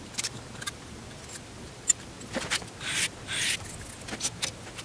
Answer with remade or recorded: recorded